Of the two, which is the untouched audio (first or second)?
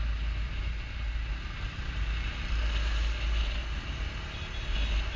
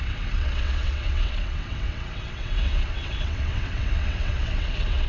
first